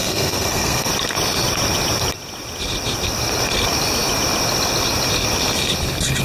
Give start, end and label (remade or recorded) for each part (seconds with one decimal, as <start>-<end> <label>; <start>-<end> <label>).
0.0-0.9 remade; 0.9-6.2 recorded